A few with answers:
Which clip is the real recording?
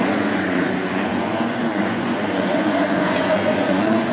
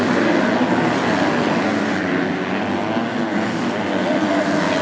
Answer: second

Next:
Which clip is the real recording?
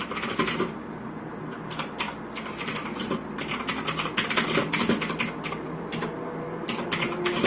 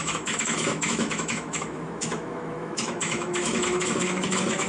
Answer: first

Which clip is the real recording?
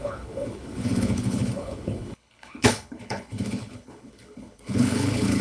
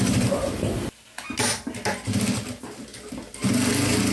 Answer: second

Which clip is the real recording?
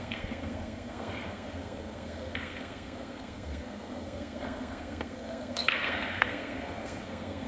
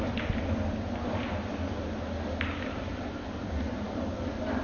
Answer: second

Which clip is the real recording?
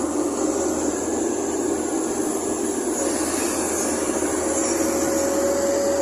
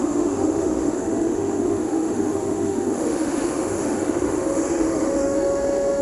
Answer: first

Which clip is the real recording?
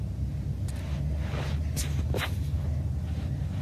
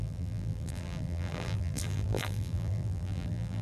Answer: first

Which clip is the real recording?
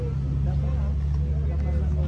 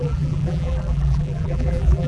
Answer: first